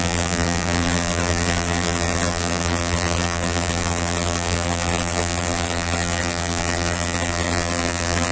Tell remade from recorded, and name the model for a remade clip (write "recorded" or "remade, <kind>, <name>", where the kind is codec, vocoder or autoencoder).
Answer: remade, vocoder, BigVGAN v2